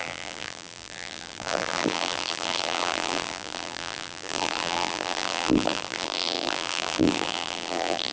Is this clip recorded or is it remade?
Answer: remade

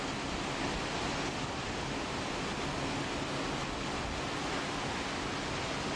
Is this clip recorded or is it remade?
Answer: recorded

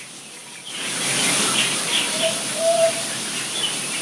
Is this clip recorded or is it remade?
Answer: remade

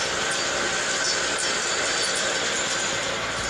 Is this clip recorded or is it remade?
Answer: recorded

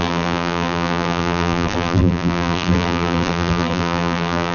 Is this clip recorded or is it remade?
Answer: remade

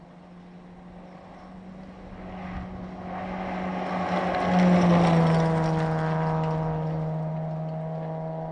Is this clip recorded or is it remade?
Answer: recorded